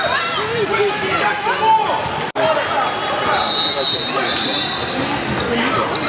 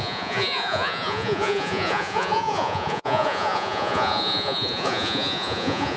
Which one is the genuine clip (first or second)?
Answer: first